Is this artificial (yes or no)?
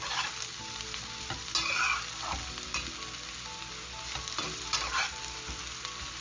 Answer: no